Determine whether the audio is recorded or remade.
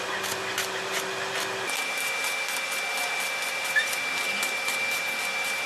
recorded